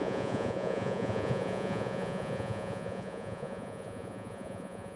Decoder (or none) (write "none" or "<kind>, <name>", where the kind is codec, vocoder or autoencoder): vocoder, Vocos